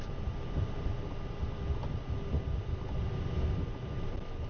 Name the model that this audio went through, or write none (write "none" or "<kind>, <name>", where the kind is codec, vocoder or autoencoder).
none